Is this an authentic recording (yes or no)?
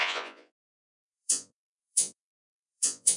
no